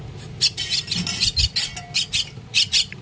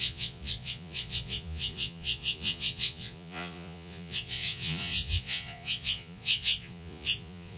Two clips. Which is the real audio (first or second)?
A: first